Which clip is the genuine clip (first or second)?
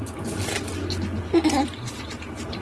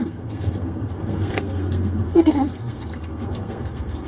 first